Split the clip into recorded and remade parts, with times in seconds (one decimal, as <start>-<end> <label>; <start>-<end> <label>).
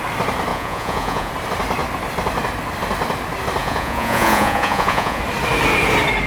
0.0-0.5 recorded; 0.5-1.3 remade; 1.3-3.6 recorded; 3.6-5.2 remade; 5.2-6.3 recorded